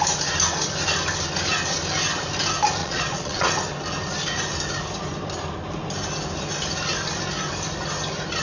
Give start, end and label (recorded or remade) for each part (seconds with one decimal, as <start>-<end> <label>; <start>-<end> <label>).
0.0-2.8 recorded; 2.8-3.5 remade; 3.5-8.4 recorded